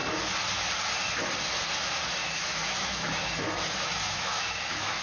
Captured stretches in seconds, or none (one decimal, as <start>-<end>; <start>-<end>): 0.0-2.2